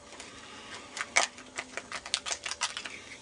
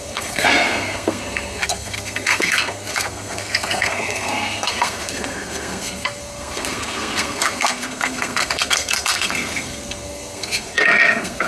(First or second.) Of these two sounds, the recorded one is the first